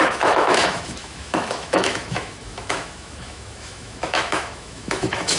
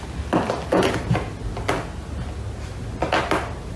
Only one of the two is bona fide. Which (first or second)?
second